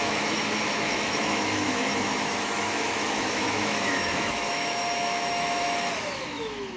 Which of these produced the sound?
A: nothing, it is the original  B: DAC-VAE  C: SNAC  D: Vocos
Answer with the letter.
B